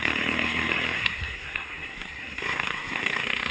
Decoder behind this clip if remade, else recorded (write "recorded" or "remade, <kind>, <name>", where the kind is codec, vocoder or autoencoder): remade, codec, SNAC